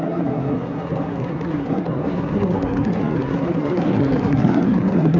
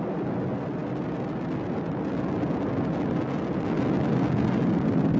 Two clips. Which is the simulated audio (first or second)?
first